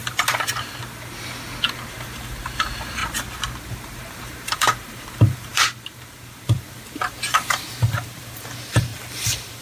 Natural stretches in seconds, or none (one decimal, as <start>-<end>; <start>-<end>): 0.0-1.7; 3.0-3.6